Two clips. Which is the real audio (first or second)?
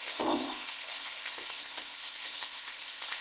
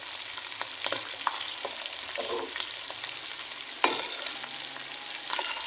second